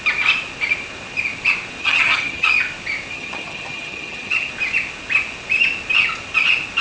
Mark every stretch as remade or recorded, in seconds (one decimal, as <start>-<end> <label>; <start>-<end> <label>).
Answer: 0.0-1.8 recorded; 1.8-2.5 remade; 2.5-3.1 recorded; 3.1-4.5 remade; 4.5-6.8 recorded